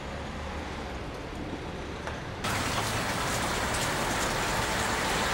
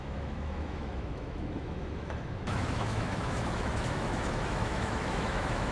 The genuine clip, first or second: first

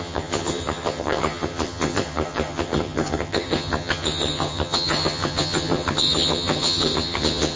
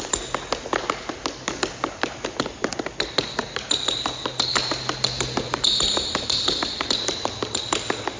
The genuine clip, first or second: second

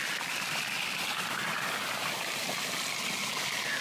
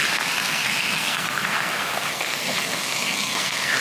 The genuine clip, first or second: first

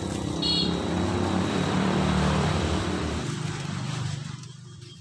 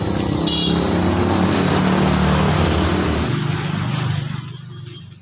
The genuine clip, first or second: second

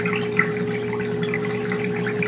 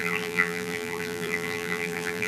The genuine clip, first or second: first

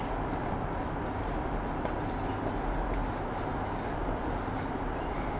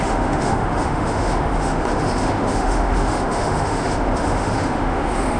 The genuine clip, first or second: first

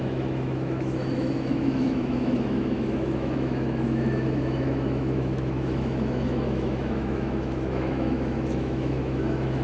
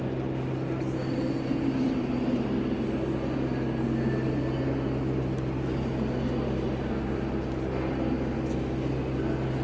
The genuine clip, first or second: second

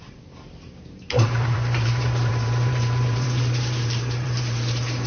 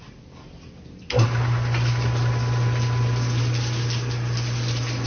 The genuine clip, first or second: second